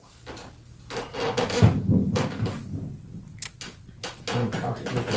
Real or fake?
real